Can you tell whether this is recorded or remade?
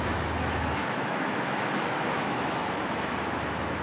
remade